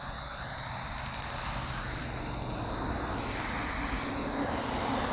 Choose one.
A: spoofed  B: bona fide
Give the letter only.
B